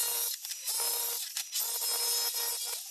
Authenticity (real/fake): real